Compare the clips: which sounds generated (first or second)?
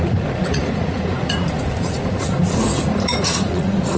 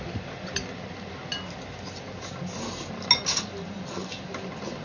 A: first